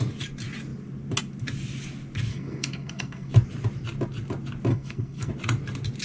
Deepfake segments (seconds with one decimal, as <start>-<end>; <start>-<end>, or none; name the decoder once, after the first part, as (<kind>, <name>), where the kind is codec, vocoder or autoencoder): 2.3-3.3 (codec, SNAC); 4.7-5.3